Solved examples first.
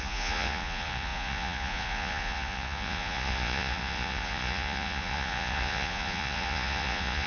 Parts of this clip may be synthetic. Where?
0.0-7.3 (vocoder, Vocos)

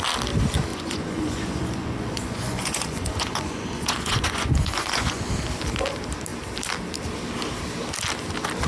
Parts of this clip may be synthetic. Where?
0.7-5.3 (vocoder, Vocos)

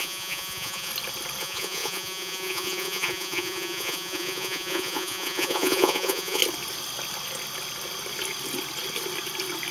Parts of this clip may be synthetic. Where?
0.0-0.9 (vocoder, Vocos); 1.4-6.4